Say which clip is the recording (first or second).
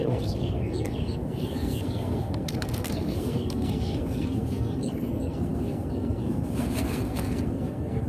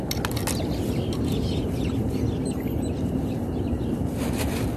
second